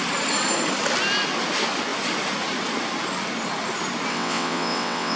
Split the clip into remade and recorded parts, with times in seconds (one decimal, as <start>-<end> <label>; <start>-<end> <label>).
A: 0.0-4.1 recorded; 4.1-5.2 remade